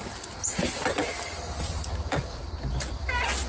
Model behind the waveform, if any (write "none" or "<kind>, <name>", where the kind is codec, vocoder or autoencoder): none